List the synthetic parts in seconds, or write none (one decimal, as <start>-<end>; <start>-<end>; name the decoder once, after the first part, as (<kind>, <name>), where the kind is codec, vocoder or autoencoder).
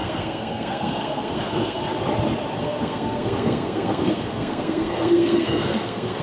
0.0-1.8 (codec, SNAC); 2.6-6.2